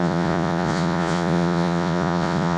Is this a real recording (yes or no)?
no